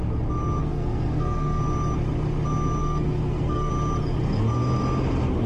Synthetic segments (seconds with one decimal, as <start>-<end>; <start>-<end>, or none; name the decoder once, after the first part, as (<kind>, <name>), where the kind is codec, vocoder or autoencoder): 0.6-1.6 (codec, SNAC); 2.8-3.7